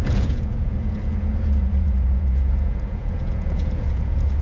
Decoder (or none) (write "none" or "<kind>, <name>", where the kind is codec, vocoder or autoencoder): vocoder, Vocos